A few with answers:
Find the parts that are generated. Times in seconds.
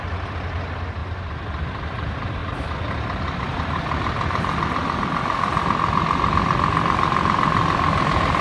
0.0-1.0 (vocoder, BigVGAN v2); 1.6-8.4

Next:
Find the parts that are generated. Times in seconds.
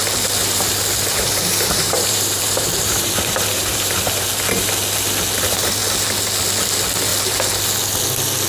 0.4-4.0 (vocoder, BigVGAN v2)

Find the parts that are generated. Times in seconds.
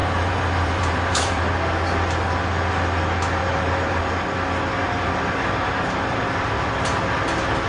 0.0-1.4 (vocoder, BigVGAN v2); 3.4-4.0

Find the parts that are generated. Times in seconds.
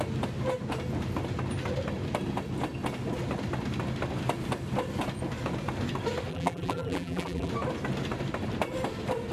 6.3-7.5 (vocoder, BigVGAN v2)